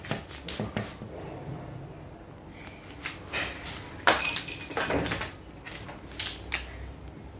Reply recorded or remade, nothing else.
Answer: recorded